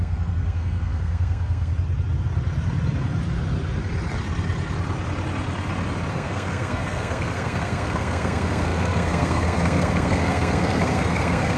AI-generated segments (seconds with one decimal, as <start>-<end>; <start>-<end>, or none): 0.0-1.7; 6.1-11.6